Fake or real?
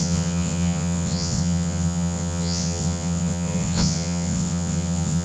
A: fake